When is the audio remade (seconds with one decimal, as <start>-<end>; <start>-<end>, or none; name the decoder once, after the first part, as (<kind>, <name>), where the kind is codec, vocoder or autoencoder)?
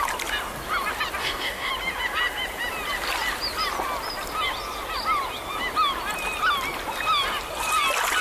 1.2-1.7 (codec, DAC)